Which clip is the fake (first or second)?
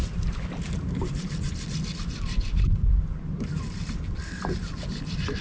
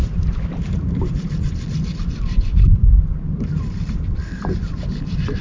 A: second